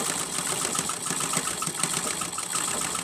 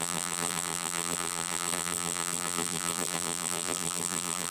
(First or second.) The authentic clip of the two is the first